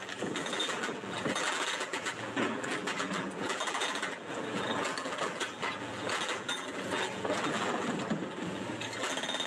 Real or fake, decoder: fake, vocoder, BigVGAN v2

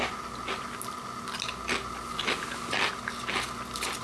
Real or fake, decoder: real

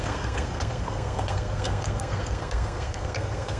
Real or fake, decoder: fake, codec, SNAC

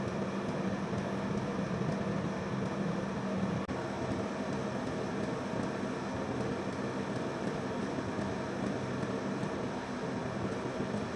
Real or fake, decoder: real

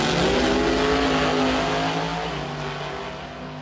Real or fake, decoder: real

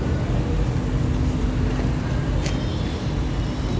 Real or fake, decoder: real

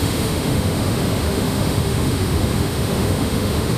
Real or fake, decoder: fake, autoencoder, DAC-VAE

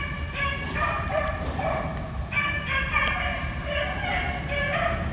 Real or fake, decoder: real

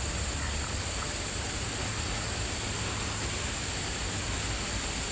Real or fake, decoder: real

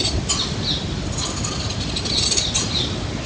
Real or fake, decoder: real